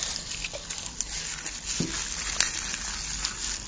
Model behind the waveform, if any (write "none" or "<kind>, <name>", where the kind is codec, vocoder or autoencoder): none